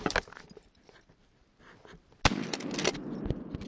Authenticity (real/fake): real